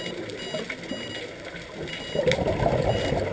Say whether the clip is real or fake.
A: real